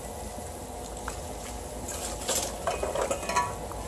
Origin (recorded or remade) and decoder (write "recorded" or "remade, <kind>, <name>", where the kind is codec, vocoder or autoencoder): recorded